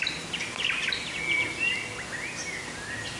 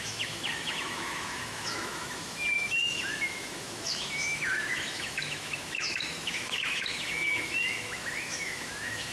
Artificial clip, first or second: second